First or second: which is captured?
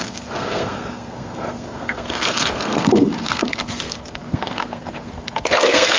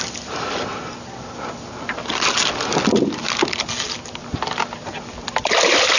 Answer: second